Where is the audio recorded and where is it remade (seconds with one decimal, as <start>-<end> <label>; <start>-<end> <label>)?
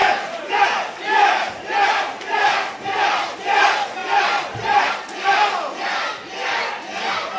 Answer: 0.0-0.5 remade; 0.5-4.0 recorded; 4.0-4.9 remade; 4.9-7.4 recorded